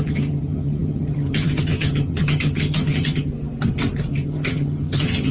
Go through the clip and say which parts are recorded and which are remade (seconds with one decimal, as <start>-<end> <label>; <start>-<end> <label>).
0.0-3.3 remade; 3.3-4.1 recorded; 4.1-5.3 remade

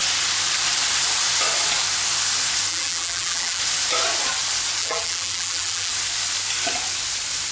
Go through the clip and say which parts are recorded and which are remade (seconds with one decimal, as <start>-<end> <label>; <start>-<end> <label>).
0.0-2.7 recorded; 2.7-3.6 remade; 3.6-4.8 recorded; 4.8-5.9 remade; 5.9-7.5 recorded

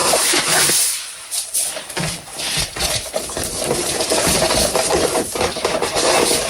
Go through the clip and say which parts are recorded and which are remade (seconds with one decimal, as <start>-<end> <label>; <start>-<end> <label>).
0.0-0.7 remade; 0.7-6.5 recorded

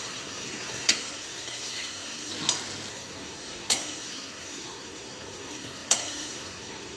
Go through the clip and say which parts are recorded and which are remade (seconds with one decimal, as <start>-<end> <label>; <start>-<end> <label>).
0.0-2.3 remade; 2.3-2.9 recorded; 2.9-7.0 remade

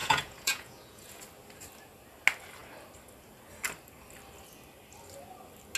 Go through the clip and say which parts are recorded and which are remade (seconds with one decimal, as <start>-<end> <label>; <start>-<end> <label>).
0.0-1.2 remade; 1.2-5.8 recorded

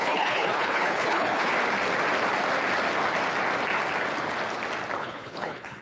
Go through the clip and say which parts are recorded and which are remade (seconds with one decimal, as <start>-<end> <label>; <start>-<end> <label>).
0.0-1.5 remade; 1.5-5.0 recorded; 5.0-5.8 remade

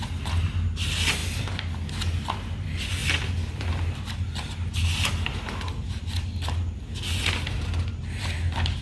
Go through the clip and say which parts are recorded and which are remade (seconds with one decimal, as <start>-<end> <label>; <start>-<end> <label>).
0.0-8.8 recorded

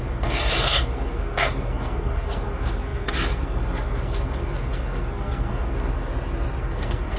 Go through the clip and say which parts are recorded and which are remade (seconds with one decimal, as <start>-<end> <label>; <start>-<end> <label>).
0.0-6.1 remade; 6.1-6.6 recorded; 6.6-7.2 remade